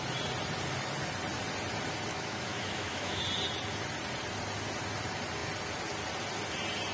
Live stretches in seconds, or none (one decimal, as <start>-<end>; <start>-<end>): 0.0-2.1; 3.2-6.9